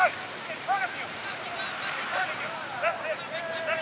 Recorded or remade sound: remade